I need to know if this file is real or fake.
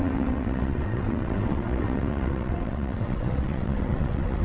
fake